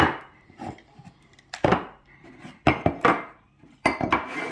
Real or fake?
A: fake